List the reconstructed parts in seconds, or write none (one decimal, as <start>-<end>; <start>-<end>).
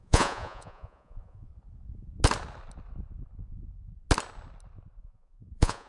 0.0-1.5; 5.0-5.9